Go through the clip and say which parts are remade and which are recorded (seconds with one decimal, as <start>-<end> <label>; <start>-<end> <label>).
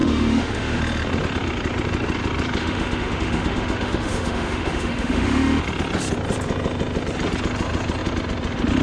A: 0.0-0.8 remade; 0.8-2.6 recorded; 2.6-5.6 remade; 5.6-8.8 recorded